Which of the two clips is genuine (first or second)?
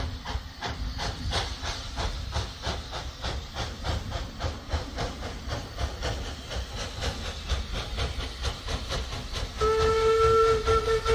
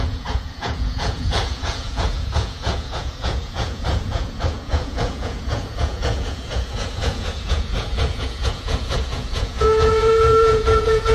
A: first